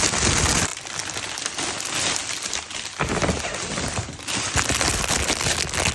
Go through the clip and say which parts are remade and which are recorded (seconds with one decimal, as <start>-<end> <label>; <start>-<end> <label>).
0.0-5.9 recorded